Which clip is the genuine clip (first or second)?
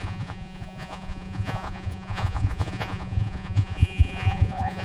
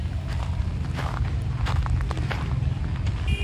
second